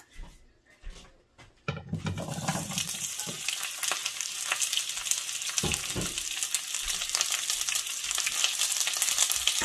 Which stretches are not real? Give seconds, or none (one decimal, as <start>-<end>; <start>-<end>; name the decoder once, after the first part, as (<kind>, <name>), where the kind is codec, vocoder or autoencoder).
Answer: 2.5-3.3 (vocoder, BigVGAN v2)